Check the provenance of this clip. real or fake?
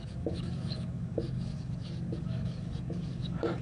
fake